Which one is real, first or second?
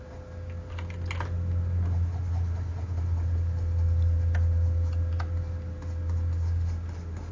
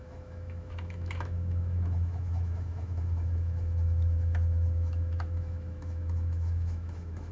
first